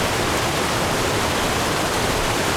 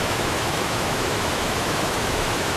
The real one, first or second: first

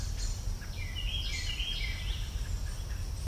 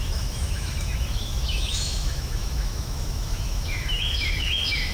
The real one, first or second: first